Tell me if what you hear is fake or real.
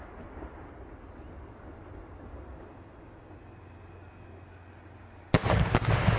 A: real